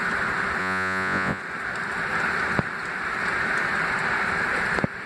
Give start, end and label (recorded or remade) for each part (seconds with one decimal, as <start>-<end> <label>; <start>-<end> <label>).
0.0-0.6 recorded; 0.6-1.4 remade; 1.4-5.1 recorded